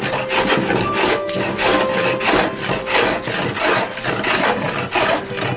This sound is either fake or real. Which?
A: real